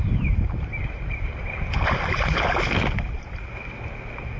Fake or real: real